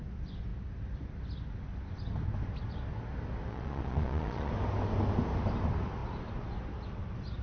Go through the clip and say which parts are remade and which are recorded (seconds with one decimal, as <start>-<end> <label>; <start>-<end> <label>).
0.0-3.5 recorded; 3.5-4.5 remade; 4.5-7.4 recorded